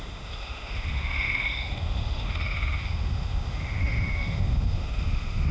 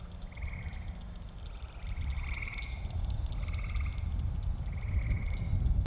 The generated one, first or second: first